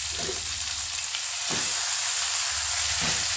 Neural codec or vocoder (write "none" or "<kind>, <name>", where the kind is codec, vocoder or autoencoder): none